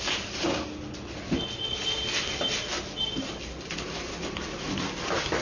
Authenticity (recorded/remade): recorded